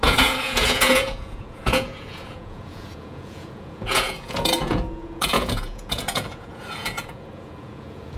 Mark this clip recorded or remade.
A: remade